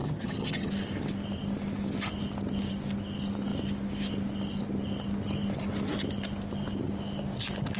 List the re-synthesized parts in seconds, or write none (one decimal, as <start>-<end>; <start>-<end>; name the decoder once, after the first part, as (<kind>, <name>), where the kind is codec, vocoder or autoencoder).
0.0-0.7 (vocoder, HiFi-GAN)